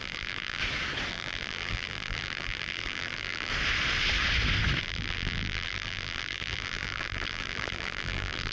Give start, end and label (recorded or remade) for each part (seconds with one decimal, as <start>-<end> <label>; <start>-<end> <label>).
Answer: 0.0-0.6 remade; 0.6-1.1 recorded; 1.1-3.5 remade; 3.5-4.8 recorded; 4.8-8.5 remade

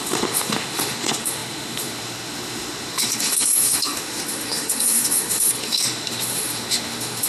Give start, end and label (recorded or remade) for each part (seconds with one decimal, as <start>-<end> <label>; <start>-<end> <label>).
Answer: 0.0-7.3 remade